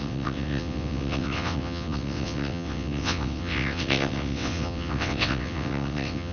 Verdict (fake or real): fake